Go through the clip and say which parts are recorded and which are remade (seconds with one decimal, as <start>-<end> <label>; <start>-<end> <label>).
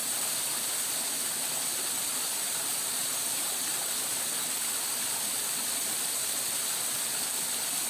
0.0-2.3 recorded; 2.3-3.8 remade; 3.8-7.9 recorded